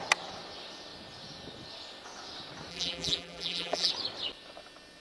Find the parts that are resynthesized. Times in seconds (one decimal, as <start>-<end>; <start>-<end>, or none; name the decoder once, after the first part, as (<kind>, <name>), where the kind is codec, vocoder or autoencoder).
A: 2.7-3.9 (vocoder, BigVGAN v2)